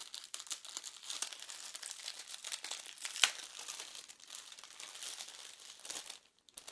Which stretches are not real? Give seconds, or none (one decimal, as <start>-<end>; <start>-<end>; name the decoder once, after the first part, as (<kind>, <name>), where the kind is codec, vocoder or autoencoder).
none